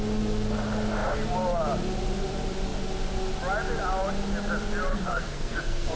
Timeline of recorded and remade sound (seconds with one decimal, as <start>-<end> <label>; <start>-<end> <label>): 0.0-4.9 recorded; 4.9-6.0 remade